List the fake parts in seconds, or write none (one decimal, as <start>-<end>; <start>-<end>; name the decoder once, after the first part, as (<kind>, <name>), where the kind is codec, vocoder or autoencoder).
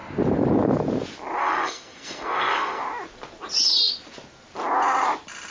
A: 1.4-2.8 (codec, SNAC)